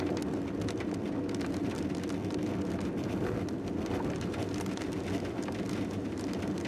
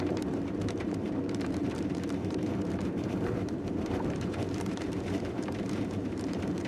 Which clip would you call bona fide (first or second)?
first